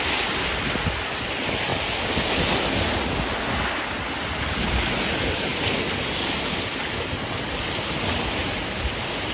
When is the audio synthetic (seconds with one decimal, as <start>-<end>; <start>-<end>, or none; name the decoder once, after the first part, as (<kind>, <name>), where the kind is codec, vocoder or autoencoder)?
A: none